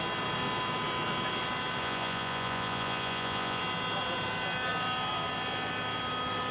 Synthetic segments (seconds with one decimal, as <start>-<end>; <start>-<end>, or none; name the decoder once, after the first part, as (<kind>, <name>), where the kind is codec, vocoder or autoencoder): 1.8-3.6 (vocoder, Vocos)